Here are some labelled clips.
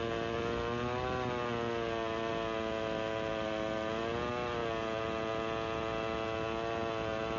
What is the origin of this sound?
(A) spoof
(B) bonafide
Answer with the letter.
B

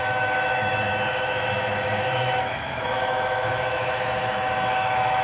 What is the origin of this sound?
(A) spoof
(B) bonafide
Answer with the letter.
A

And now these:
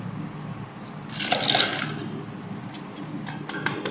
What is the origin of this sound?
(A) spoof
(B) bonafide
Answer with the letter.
B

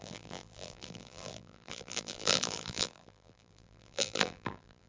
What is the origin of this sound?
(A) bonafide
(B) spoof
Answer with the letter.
B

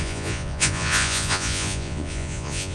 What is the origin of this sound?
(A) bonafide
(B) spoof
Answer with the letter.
B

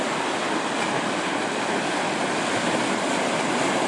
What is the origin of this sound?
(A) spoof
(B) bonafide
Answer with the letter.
B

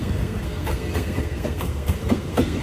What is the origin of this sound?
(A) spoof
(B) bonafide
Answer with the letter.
A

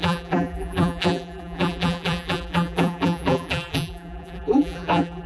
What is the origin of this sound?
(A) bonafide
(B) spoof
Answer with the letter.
B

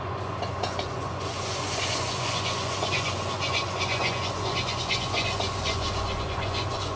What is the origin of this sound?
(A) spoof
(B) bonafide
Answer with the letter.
A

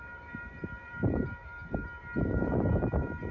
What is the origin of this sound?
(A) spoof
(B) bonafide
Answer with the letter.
A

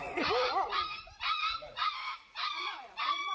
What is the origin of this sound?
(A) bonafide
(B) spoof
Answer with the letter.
B